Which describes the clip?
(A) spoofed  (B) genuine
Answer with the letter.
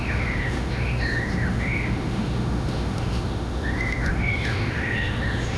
A